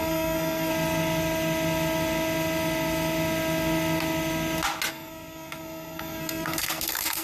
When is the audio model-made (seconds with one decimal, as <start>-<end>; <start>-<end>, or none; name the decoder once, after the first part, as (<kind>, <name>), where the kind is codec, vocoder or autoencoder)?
0.0-0.7 (codec, SNAC); 4.9-7.2